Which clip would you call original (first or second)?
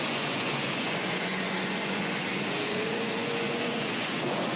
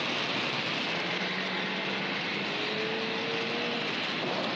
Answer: second